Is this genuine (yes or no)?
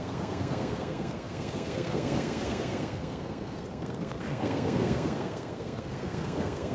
no